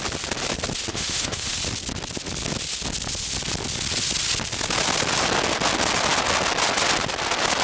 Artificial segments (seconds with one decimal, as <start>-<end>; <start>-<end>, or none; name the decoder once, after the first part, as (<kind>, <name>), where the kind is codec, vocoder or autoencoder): 0.9-1.6 (autoencoder, DAC-VAE)